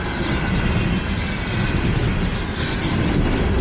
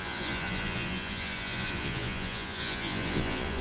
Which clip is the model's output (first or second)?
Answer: second